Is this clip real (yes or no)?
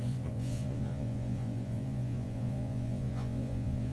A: no